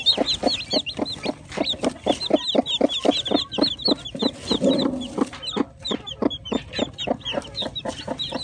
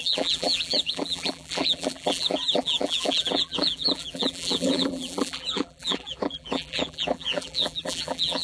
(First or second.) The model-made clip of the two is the second